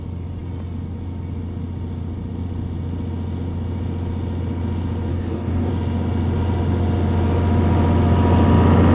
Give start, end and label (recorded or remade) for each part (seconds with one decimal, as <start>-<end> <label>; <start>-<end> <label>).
0.0-5.1 recorded; 5.1-5.7 remade; 5.7-8.9 recorded